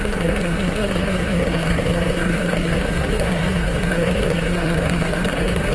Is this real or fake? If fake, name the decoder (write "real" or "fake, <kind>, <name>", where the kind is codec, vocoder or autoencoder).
fake, codec, SNAC